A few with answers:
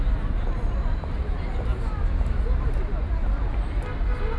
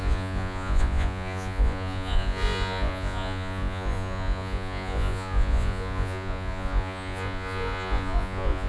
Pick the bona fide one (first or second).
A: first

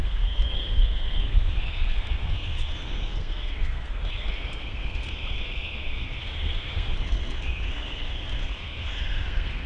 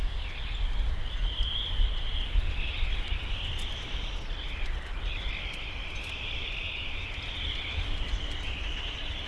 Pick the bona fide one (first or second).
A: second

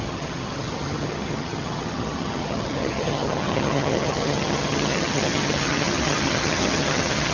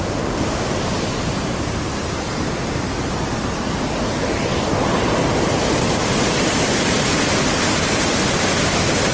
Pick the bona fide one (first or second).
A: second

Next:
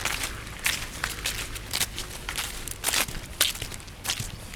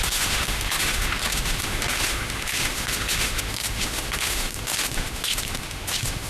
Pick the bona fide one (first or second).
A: first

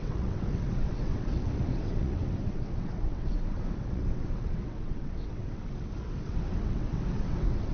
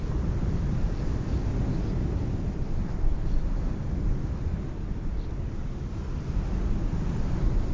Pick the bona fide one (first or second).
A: second